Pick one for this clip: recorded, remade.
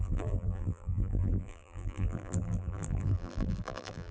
remade